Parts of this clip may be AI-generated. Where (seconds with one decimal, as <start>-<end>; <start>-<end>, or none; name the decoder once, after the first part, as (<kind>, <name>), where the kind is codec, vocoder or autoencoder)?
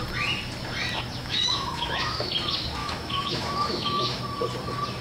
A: 1.2-2.3 (autoencoder, DAC-VAE); 2.8-4.2